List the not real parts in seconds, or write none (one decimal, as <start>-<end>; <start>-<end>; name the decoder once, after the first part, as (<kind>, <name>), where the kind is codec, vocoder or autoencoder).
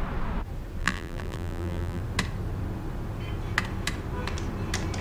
0.8-2.0 (vocoder, BigVGAN v2)